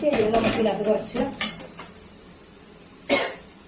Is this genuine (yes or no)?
yes